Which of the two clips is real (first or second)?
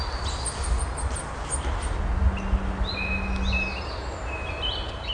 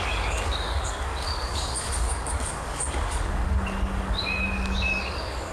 first